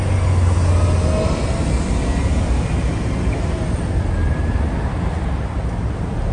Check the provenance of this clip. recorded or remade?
recorded